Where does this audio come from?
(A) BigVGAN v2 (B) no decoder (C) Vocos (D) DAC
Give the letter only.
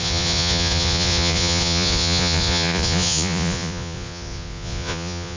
C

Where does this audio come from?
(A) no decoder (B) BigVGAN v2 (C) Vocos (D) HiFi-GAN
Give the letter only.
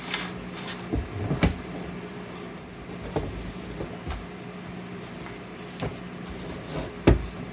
A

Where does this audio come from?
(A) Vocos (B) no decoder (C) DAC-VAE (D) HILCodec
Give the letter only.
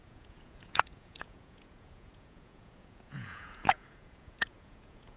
A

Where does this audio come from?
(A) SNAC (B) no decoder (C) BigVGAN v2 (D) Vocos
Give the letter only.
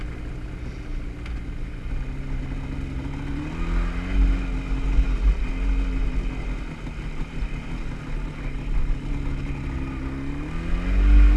B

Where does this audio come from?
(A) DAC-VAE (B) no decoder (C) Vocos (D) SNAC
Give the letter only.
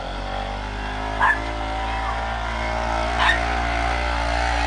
B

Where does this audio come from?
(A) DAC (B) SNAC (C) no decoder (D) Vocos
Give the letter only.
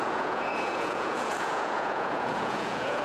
D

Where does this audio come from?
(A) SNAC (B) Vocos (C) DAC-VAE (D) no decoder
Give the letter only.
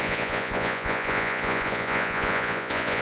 B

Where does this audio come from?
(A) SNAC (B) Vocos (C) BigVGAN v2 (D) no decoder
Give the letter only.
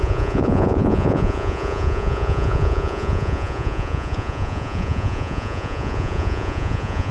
B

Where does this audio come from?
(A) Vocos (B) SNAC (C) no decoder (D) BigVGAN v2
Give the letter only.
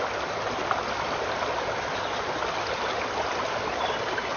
C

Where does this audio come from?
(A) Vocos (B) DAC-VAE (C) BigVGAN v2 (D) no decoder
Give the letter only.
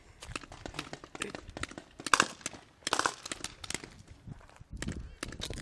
D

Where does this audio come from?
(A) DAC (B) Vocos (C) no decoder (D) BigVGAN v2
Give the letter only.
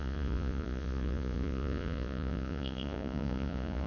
B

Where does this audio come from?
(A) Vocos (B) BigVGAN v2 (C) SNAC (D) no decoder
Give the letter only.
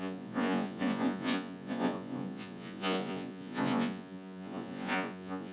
A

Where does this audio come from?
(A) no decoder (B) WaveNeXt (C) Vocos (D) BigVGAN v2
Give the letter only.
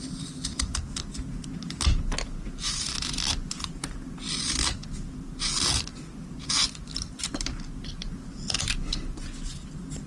A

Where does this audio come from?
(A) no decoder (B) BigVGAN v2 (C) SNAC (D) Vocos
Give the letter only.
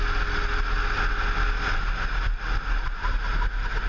A